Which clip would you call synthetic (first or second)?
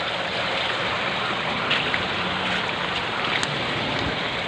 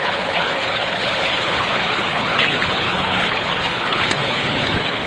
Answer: second